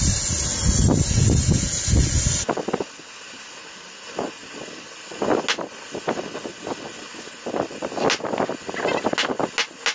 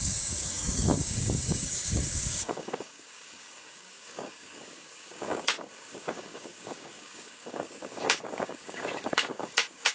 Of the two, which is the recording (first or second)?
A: first